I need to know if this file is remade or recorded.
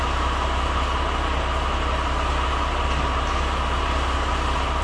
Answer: recorded